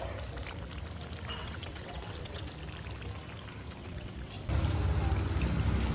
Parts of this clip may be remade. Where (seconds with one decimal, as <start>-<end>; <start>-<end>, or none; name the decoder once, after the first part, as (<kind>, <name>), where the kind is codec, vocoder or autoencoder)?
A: 1.4-2.5 (vocoder, WaveNeXt); 3.8-4.3